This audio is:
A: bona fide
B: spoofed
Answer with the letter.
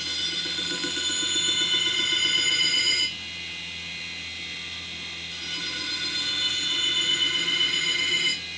A